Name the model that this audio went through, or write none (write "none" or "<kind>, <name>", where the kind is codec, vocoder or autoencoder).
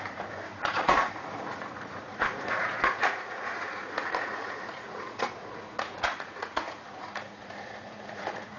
vocoder, Vocos